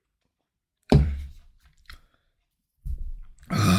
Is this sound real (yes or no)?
no